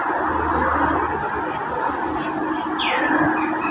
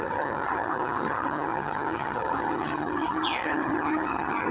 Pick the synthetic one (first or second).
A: second